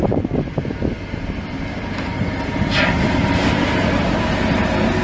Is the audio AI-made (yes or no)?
no